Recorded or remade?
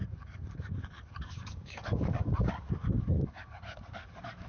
remade